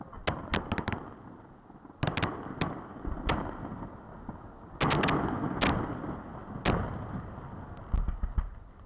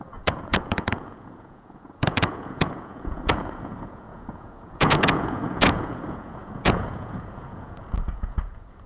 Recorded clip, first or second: first